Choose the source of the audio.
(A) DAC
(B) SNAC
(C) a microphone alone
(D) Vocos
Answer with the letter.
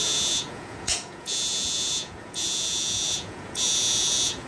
D